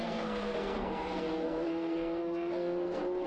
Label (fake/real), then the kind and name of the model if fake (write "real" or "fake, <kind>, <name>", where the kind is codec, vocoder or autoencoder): fake, codec, SNAC